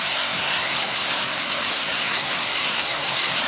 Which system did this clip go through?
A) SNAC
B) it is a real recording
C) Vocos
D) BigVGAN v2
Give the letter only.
A